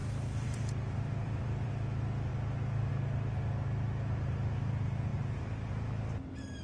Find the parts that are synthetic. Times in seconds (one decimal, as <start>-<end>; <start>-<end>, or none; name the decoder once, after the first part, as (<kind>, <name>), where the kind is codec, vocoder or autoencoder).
0.0-1.7 (vocoder, BigVGAN v2); 2.3-2.9; 5.1-5.7

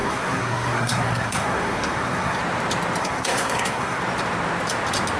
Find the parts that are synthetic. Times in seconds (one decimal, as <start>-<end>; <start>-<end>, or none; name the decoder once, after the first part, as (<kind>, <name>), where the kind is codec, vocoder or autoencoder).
0.0-2.4 (codec, SNAC); 3.0-4.0

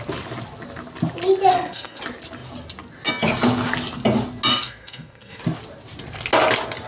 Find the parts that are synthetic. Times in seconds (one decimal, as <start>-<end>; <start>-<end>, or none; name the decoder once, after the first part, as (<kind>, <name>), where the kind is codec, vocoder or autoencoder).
1.5-2.0 (codec, SNAC); 4.5-5.4

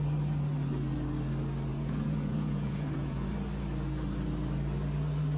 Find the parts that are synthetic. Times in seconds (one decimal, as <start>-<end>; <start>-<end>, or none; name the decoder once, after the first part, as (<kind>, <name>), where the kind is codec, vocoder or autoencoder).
1.7-3.3 (vocoder, Vocos)

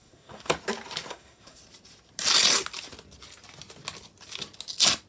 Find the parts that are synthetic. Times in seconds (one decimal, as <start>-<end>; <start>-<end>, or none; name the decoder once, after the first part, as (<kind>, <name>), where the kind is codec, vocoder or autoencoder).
0.0-0.5 (codec, SNAC); 1.1-1.6

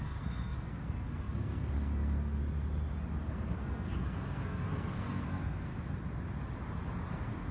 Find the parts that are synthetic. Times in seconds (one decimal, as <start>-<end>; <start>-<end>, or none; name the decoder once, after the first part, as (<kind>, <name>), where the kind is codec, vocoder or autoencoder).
0.0-2.4 (codec, SNAC); 3.2-5.7; 7.1-7.5

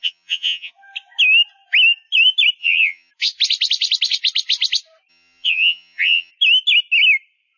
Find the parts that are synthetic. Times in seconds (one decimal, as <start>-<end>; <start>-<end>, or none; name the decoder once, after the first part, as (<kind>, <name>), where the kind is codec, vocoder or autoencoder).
0.0-0.7 (vocoder, HiFi-GAN); 2.6-3.1; 5.1-6.3